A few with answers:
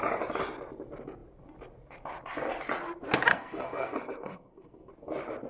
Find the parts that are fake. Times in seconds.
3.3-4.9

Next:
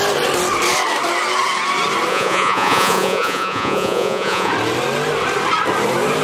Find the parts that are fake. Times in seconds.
2.1-4.5

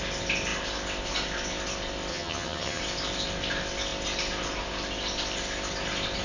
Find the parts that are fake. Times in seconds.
2.1-2.8